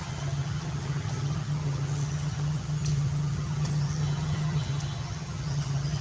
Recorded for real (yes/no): no